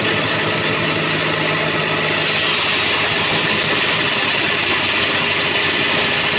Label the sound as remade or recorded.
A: recorded